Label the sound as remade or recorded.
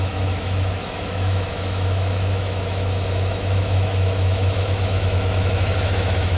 remade